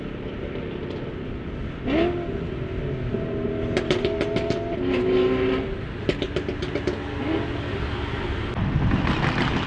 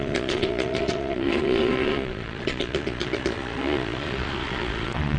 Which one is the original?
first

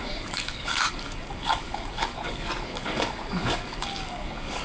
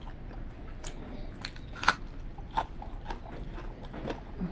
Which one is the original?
second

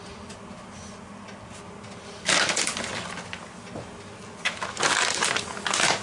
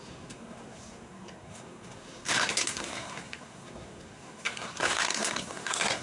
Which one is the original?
first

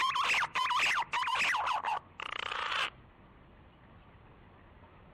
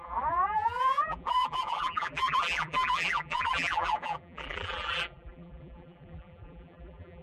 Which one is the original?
first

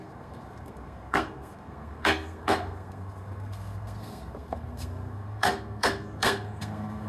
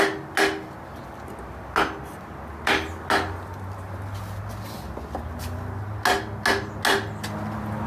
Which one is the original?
second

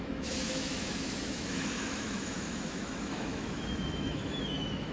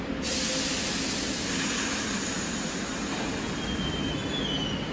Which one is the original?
second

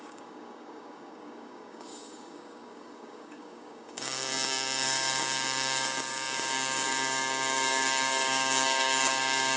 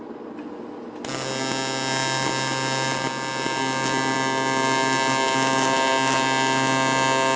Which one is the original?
second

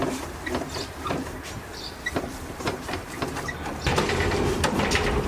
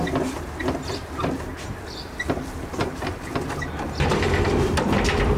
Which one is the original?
second